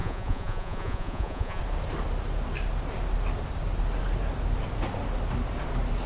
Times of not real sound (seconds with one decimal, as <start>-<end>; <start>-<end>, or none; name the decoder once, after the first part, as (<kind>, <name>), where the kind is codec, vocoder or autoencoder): 0.0-1.6 (vocoder, Vocos)